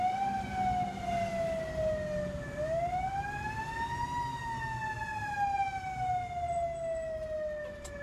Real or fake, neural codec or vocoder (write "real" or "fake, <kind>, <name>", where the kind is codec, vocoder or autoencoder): real